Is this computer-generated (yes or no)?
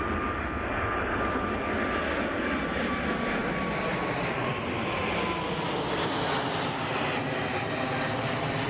no